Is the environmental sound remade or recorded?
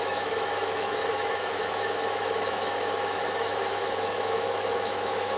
remade